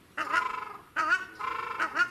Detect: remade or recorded recorded